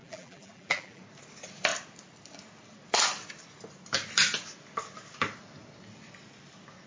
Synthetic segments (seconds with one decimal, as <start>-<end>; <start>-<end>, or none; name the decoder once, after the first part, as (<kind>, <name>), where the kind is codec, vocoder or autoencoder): 0.0-1.0 (vocoder, BigVGAN v2)